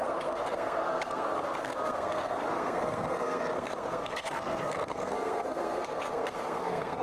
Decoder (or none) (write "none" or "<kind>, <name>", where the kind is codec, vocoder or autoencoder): codec, SNAC